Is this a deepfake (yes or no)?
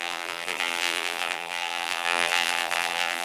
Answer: yes